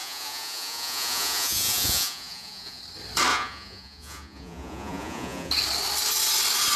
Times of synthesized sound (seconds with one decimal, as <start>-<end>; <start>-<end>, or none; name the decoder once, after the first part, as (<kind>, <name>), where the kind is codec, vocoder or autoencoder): 0.0-2.8 (vocoder, Vocos); 3.3-5.5